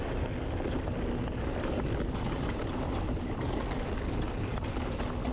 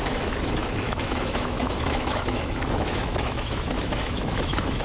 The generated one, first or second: second